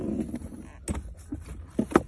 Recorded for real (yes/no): yes